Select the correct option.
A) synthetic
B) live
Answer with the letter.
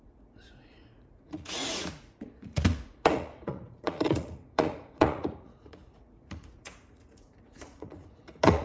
A